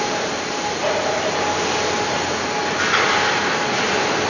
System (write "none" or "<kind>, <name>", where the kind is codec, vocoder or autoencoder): none